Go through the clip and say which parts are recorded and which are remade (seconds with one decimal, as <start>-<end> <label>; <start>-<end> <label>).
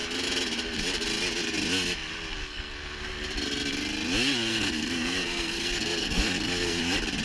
0.0-2.4 recorded; 2.4-3.0 remade; 3.0-4.5 recorded; 4.5-6.8 remade; 6.8-7.2 recorded